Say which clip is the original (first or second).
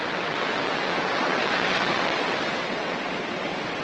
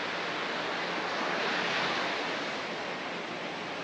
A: second